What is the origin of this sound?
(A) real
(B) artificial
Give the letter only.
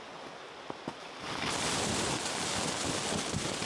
A